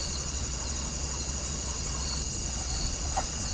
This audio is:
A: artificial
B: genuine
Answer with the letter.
A